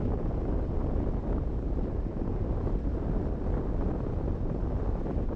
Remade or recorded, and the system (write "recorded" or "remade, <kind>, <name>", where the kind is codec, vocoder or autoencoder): recorded